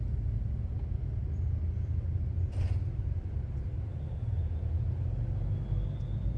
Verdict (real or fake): real